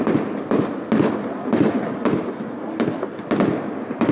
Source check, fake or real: real